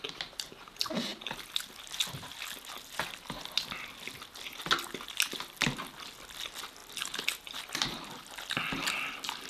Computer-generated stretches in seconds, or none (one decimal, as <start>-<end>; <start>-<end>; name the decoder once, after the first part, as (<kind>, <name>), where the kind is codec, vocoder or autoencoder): none